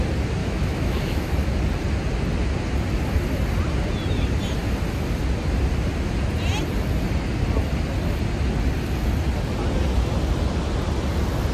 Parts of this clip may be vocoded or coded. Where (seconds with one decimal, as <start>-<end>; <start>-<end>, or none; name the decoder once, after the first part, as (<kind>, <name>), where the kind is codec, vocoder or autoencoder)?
0.4-1.3 (autoencoder, DAC-VAE)